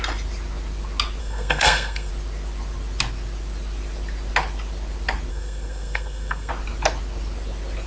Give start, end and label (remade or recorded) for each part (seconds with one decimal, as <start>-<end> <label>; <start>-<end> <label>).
0.0-1.2 recorded; 1.2-2.1 remade; 2.1-5.3 recorded; 5.3-6.5 remade; 6.5-7.9 recorded

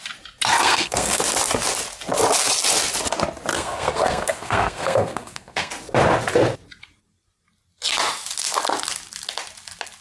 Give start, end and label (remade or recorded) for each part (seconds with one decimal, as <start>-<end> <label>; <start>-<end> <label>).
0.0-0.5 recorded; 0.5-1.2 remade; 1.2-3.5 recorded; 3.5-5.7 remade; 5.7-10.0 recorded

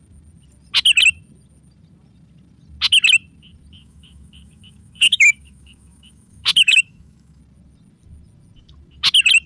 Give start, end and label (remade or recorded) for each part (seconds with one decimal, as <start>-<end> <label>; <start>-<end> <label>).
0.0-3.8 recorded; 3.8-7.4 remade; 7.4-9.5 recorded